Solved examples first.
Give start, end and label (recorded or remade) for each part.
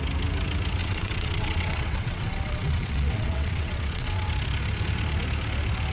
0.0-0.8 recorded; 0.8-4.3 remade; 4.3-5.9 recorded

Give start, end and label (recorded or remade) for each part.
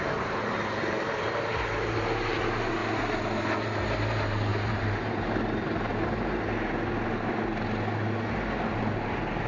0.0-2.8 remade; 2.8-3.5 recorded; 3.5-5.9 remade; 5.9-8.8 recorded; 8.8-9.5 remade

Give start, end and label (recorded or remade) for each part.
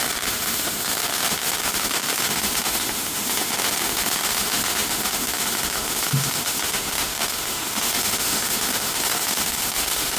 0.0-10.2 remade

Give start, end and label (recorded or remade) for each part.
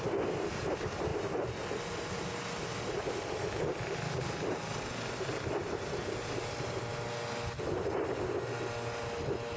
0.0-9.6 recorded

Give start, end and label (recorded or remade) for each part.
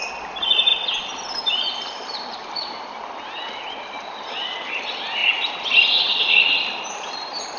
0.0-0.7 recorded; 0.7-4.3 remade; 4.3-5.2 recorded; 5.2-7.6 remade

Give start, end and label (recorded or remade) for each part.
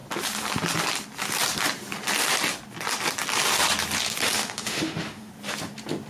0.0-4.4 recorded; 4.4-5.3 remade; 5.3-6.1 recorded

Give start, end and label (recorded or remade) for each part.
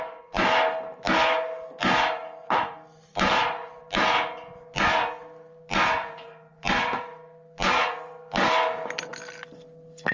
0.0-10.1 recorded